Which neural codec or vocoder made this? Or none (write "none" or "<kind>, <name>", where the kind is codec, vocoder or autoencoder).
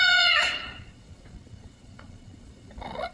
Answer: vocoder, Vocos